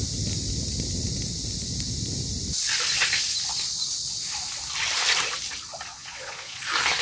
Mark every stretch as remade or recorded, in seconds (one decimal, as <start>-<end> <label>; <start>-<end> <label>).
0.0-5.9 recorded; 5.9-6.6 remade; 6.6-7.0 recorded